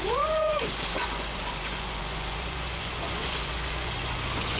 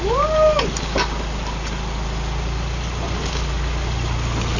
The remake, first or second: first